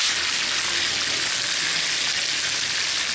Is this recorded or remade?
recorded